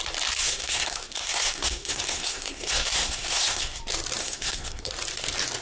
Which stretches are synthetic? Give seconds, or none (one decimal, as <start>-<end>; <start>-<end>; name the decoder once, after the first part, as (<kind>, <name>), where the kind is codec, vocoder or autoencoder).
0.4-3.8 (codec, SNAC); 4.2-4.9